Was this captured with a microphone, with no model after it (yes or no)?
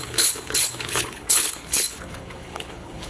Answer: no